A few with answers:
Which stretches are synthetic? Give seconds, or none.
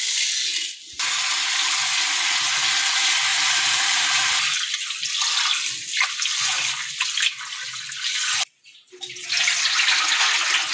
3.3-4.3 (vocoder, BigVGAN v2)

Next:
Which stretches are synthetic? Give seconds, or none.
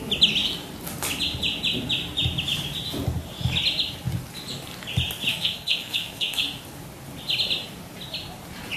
5.3-6.4 (codec, SNAC)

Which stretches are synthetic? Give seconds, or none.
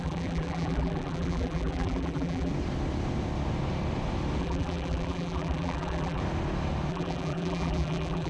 0.0-2.5 (vocoder, BigVGAN v2); 4.4-6.2; 6.9-8.3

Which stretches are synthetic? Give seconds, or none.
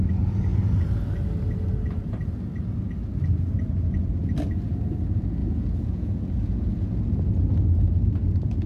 5.4-7.0 (vocoder, Vocos)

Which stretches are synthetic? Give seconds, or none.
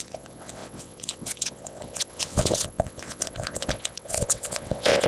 0.0-5.1 (vocoder, WaveNeXt)